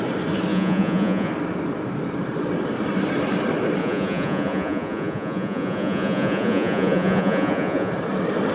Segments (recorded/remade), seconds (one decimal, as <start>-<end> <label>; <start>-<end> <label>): 0.0-0.5 recorded; 0.5-1.3 remade; 1.3-3.8 recorded; 3.8-7.9 remade; 7.9-8.5 recorded